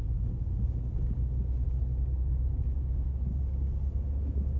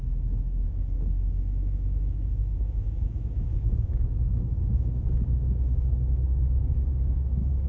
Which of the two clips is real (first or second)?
first